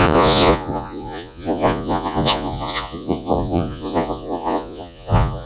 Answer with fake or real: fake